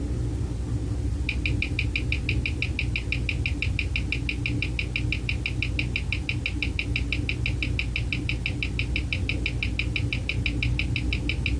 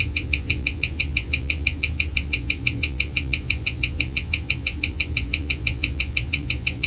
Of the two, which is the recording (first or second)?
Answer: first